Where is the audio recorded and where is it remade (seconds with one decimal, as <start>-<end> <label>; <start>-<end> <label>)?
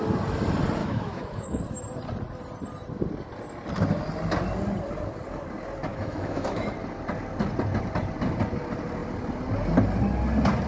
0.0-0.8 recorded; 0.8-1.6 remade; 1.6-5.9 recorded; 5.9-6.7 remade; 6.7-10.7 recorded